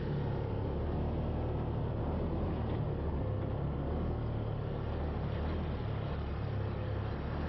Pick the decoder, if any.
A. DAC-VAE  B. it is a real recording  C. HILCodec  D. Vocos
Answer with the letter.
B